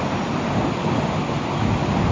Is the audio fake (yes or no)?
no